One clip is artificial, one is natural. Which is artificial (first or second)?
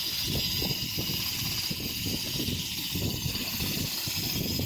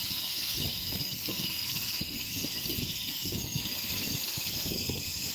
second